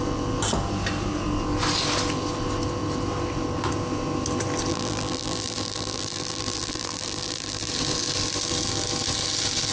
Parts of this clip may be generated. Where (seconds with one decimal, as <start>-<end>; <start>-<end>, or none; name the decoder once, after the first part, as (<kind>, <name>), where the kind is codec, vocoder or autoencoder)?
4.7-7.7 (vocoder, BigVGAN v2)